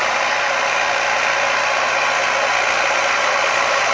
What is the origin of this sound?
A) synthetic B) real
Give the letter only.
B